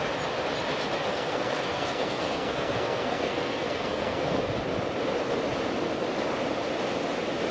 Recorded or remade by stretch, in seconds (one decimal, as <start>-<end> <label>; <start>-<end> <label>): 0.0-1.1 recorded; 1.1-4.5 remade; 4.5-7.5 recorded